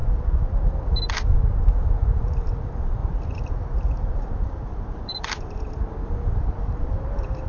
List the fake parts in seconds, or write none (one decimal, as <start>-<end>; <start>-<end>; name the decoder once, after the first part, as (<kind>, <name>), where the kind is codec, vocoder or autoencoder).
3.0-5.8 (vocoder, BigVGAN v2); 6.9-7.5